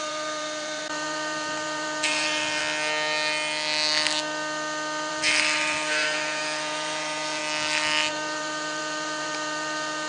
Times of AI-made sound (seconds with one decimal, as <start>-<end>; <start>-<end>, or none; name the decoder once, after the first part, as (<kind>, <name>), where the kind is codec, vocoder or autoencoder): 0.0-2.6 (vocoder, BigVGAN v2); 5.1-7.4; 8.1-10.1